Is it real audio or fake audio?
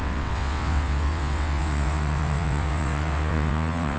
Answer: fake